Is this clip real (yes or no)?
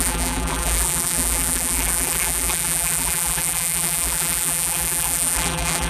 no